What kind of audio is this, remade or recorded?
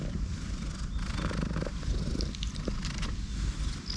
recorded